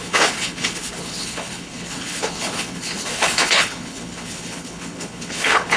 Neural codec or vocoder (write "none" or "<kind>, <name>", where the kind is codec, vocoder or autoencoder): codec, HILCodec